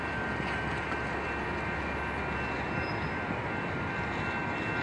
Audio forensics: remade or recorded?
recorded